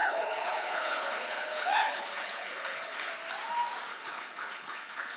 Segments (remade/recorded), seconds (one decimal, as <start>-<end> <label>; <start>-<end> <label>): 0.0-3.1 remade; 3.1-3.9 recorded; 3.9-5.2 remade